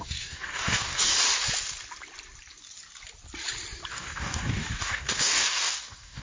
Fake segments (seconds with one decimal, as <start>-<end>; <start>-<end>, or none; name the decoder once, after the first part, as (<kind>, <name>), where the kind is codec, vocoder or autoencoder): 0.0-1.1 (codec, DAC); 3.9-6.2